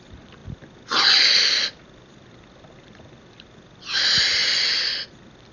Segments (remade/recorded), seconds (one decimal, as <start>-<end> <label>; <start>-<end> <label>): 0.0-5.5 recorded